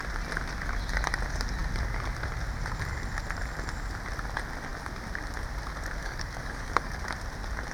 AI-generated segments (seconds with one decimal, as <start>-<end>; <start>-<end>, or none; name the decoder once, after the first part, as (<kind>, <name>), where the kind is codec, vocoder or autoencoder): 6.0-7.0 (codec, DAC)